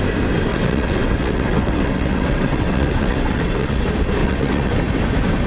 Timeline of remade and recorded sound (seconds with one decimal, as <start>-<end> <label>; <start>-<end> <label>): 0.0-0.5 recorded; 0.5-3.8 remade; 3.8-4.2 recorded; 4.2-4.8 remade; 4.8-5.5 recorded